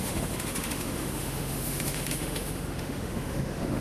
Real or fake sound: fake